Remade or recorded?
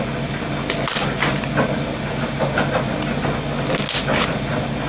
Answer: recorded